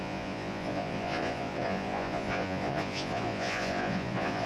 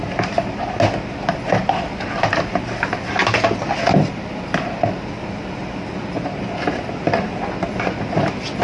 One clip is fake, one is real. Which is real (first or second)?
second